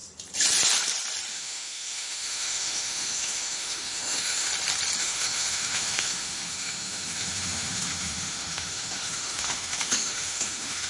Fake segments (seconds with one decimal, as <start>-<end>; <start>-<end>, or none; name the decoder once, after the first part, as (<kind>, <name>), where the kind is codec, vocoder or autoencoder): 1.3-4.5 (autoencoder, DAC-VAE); 5.0-10.9